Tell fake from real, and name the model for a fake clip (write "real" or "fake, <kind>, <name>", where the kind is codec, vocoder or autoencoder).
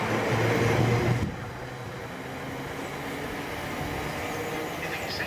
real